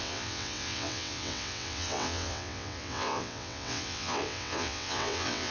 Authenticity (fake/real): fake